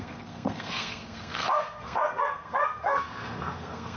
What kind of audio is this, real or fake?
fake